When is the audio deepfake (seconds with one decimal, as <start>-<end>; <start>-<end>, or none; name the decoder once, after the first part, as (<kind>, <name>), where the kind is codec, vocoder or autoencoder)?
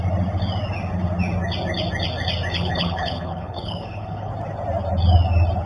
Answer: 2.5-4.3 (codec, HILCodec)